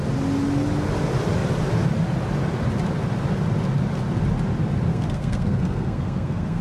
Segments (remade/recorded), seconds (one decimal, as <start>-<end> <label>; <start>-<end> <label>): 0.0-4.9 recorded; 4.9-6.6 remade